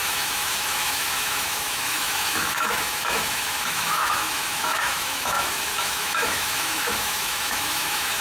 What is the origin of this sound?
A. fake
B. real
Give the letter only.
A